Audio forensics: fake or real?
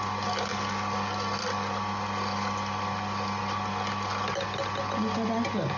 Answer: real